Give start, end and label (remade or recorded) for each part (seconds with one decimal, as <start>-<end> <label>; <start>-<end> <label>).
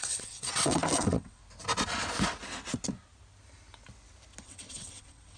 0.0-1.4 remade; 1.4-4.4 recorded; 4.4-5.4 remade